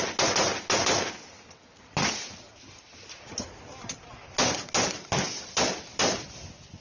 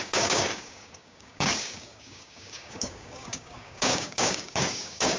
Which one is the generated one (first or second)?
second